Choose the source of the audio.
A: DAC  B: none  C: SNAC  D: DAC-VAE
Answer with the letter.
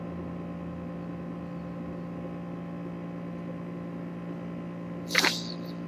B